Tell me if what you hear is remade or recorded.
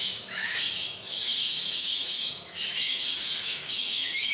remade